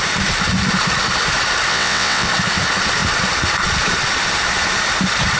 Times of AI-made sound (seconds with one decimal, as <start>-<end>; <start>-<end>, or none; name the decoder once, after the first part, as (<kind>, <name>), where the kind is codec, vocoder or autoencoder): 1.7-2.3 (vocoder, WaveNeXt)